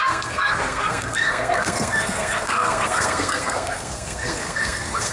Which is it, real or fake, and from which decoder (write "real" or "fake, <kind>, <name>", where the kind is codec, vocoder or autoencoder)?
fake, codec, SNAC